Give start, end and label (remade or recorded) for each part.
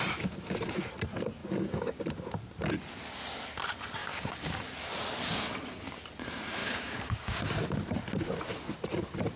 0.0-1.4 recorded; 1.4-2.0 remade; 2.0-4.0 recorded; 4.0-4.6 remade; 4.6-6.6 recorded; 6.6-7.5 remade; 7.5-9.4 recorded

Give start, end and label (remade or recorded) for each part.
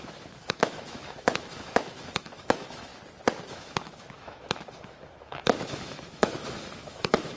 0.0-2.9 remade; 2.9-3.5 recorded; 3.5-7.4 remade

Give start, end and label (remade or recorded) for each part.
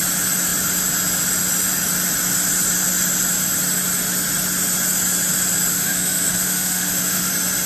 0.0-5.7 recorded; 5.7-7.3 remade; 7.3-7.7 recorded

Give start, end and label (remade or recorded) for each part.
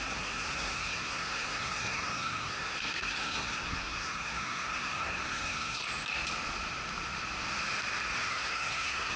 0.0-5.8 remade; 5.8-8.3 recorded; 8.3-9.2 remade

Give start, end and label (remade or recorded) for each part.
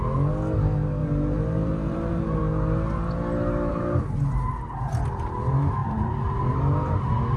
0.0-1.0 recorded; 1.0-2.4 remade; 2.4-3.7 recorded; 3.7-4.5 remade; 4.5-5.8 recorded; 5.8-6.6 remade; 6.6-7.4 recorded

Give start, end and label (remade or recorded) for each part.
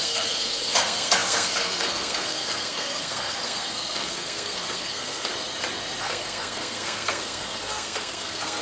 0.0-5.3 remade; 5.3-6.0 recorded; 6.0-8.6 remade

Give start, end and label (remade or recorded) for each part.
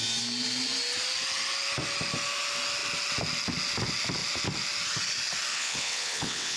0.0-5.5 recorded; 5.5-6.6 remade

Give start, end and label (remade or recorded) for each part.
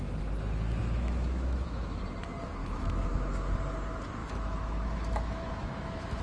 0.0-0.8 recorded; 0.8-2.0 remade; 2.0-2.6 recorded; 2.6-3.5 remade; 3.5-4.2 recorded; 4.2-6.2 remade